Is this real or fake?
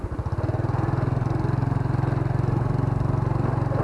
real